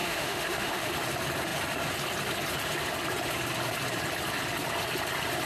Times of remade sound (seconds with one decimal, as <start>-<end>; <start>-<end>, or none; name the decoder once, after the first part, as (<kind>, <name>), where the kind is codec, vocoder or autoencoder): 0.0-0.9 (autoencoder, DAC-VAE)